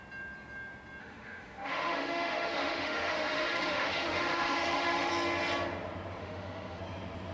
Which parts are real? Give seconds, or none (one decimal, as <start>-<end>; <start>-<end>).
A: 0.0-1.0; 5.1-6.2; 6.8-7.3